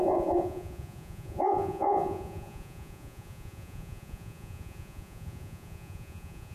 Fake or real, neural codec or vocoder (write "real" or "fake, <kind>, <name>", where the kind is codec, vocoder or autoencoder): fake, vocoder, Vocos